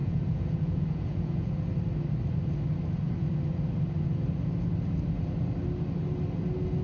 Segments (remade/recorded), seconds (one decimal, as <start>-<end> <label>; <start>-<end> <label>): 0.0-1.5 remade; 1.5-6.8 recorded